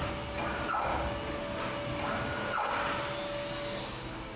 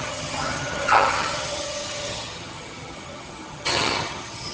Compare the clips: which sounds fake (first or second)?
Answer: second